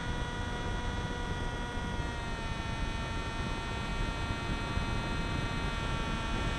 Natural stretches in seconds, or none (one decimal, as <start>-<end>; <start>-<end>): 0.0-6.6